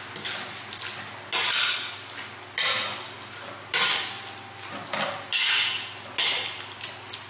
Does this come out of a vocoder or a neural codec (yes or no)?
no